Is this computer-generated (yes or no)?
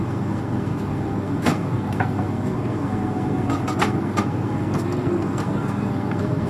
yes